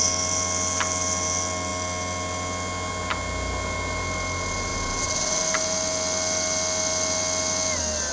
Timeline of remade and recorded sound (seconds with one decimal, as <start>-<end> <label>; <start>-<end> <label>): 0.0-8.1 recorded